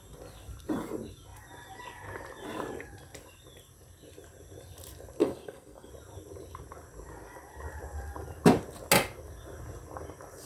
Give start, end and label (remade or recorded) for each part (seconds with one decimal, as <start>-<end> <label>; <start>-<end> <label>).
0.0-5.2 recorded; 5.2-5.9 remade; 5.9-10.5 recorded